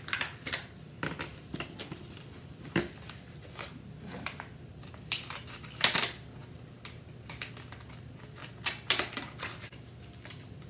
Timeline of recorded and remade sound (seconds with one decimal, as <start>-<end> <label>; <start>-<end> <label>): 0.0-10.7 recorded